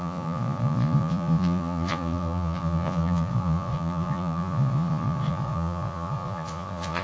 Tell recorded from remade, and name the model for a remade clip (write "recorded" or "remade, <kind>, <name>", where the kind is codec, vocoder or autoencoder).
remade, vocoder, Vocos